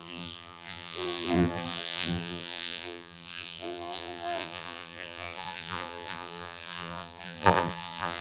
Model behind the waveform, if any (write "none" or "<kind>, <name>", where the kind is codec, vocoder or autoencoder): vocoder, BigVGAN v2